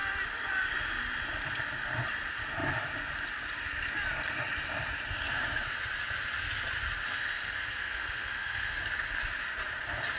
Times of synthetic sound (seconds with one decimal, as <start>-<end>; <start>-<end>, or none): 7.1-8.7